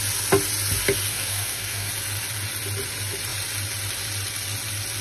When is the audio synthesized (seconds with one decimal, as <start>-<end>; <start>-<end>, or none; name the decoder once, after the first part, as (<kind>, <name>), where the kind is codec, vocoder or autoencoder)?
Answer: 1.1-1.9 (codec, DAC)